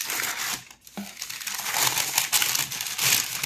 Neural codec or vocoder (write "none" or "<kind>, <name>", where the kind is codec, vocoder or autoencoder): none